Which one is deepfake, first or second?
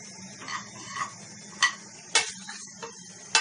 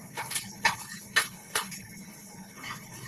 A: second